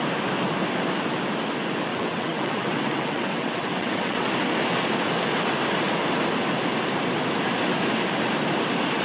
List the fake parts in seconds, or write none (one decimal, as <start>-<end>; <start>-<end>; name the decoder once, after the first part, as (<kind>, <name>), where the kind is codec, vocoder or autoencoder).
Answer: 1.9-4.3 (vocoder, WaveNeXt)